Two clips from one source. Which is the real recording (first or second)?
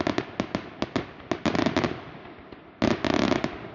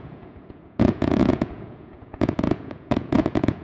first